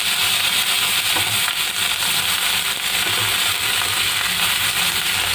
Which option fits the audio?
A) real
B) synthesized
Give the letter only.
A